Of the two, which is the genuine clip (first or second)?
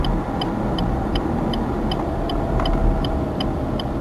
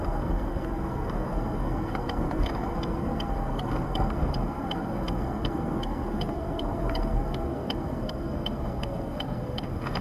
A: first